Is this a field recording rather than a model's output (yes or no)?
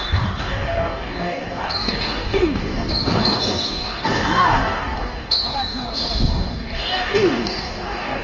no